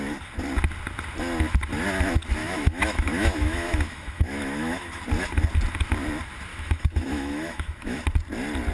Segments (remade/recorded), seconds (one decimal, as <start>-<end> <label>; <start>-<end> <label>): 0.0-2.4 recorded; 2.4-5.0 remade; 5.0-6.5 recorded; 6.5-8.0 remade; 8.0-8.7 recorded